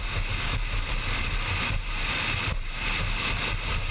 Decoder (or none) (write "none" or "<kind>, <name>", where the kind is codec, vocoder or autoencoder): none